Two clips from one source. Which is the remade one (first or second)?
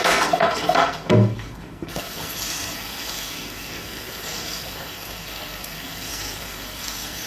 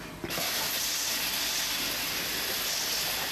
first